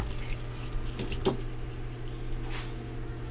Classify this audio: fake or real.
real